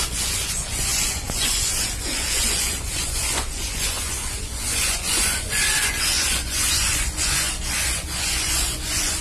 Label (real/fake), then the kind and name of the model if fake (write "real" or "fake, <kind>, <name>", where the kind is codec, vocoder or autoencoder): fake, vocoder, Vocos